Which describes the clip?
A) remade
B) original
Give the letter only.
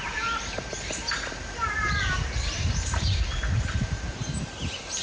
A